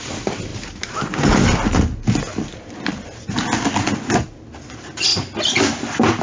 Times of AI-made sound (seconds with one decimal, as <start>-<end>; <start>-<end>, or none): none